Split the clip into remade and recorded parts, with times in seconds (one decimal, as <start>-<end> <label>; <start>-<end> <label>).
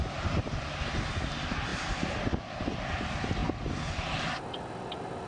0.0-3.4 recorded; 3.4-4.6 remade; 4.6-5.3 recorded